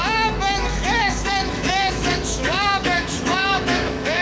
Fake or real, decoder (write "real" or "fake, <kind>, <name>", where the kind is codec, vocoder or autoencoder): fake, autoencoder, DAC-VAE